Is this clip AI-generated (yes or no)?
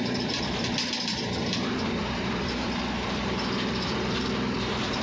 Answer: yes